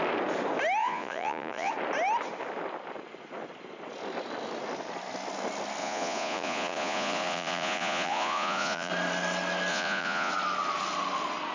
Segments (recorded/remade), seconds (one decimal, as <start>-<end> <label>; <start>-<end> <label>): 0.0-0.8 recorded; 0.8-1.7 remade; 1.7-5.8 recorded; 5.8-8.9 remade; 8.9-9.7 recorded; 9.7-10.3 remade; 10.3-11.5 recorded